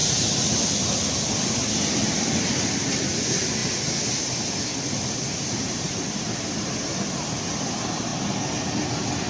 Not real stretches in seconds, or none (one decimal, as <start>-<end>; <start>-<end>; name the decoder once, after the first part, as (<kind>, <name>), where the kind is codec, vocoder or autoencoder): none